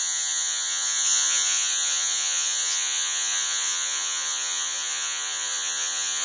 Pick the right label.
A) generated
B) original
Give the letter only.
A